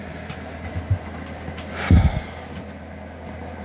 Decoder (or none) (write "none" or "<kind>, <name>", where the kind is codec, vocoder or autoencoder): none